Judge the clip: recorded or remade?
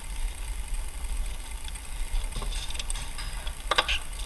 recorded